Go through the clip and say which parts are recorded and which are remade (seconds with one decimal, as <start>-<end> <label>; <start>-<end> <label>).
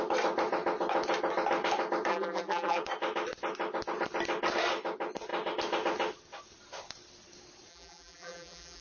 0.0-2.1 recorded; 2.1-2.8 remade; 2.8-7.7 recorded; 7.7-8.8 remade